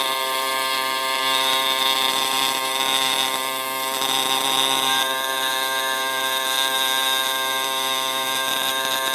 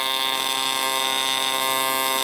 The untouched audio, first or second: second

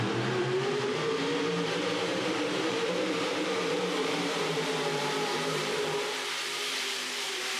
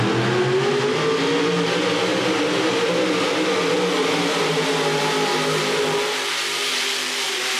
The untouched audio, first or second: second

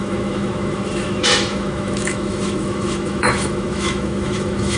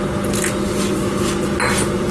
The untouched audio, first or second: second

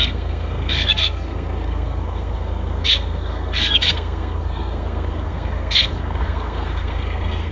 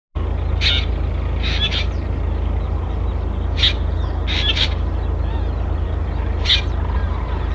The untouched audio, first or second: second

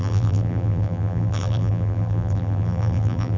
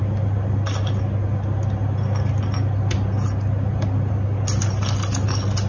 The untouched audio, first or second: second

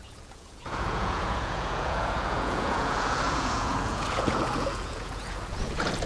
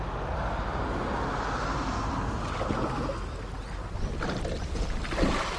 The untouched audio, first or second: second